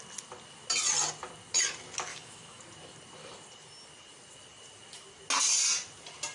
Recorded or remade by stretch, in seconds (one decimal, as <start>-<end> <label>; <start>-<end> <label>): 0.0-2.1 recorded; 2.1-2.6 remade; 2.6-6.3 recorded